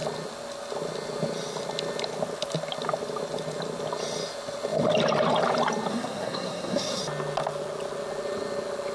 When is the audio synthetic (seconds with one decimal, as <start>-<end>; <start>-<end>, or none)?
5.9-7.0